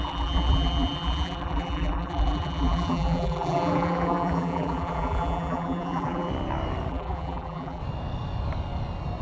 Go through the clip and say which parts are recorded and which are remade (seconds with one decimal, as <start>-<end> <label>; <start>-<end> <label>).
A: 0.0-6.3 remade; 6.3-6.9 recorded; 6.9-7.8 remade; 7.8-9.2 recorded